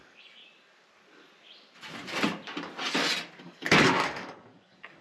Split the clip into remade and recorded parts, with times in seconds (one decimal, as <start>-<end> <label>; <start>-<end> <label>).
0.0-0.4 remade; 0.4-3.4 recorded; 3.4-5.0 remade